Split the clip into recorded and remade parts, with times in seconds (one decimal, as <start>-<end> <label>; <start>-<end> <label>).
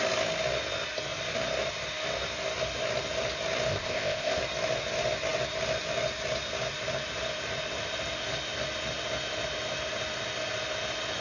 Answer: 0.0-3.7 recorded; 3.7-4.4 remade; 4.4-11.2 recorded